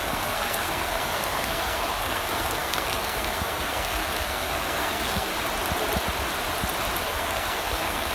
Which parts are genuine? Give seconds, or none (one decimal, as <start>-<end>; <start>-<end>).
5.3-7.0